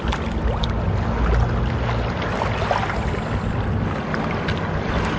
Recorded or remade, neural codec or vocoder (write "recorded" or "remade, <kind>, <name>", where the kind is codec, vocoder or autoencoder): recorded